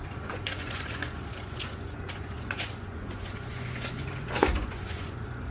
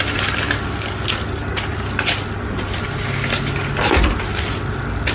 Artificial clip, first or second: first